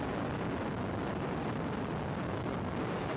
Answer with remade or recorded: recorded